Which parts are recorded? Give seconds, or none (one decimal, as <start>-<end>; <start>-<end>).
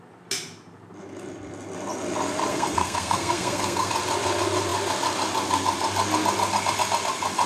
0.0-2.5; 3.9-7.5